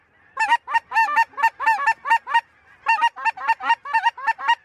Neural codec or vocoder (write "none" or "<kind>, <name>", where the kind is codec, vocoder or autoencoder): none